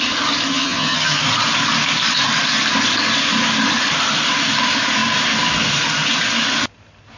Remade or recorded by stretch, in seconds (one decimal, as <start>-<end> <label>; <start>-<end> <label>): 0.0-0.5 recorded; 0.5-1.2 remade; 1.2-7.2 recorded